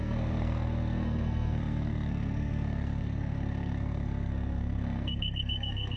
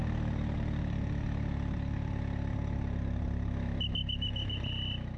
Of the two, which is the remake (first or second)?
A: first